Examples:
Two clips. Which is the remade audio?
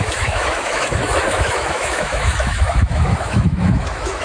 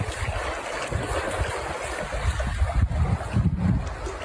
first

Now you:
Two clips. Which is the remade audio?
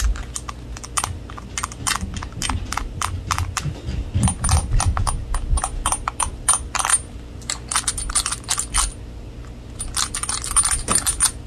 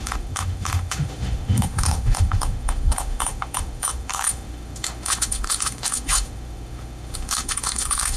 second